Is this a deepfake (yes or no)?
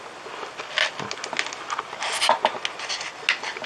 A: no